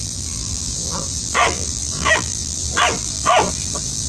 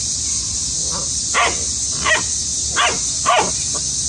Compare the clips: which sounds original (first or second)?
second